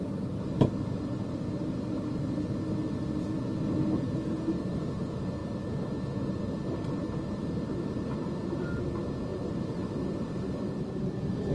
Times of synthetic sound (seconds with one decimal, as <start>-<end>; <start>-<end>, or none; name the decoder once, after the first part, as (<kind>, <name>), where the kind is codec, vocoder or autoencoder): 4.3-5.0 (vocoder, BigVGAN v2); 5.4-6.0; 9.3-11.5